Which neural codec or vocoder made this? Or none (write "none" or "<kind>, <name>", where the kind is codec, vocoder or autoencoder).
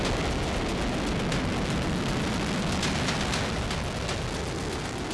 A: none